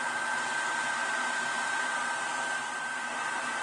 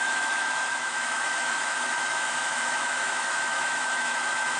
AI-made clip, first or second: second